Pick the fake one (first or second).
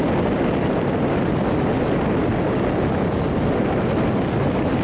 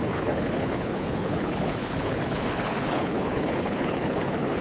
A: second